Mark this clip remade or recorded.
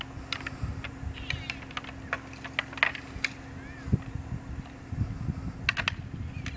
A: recorded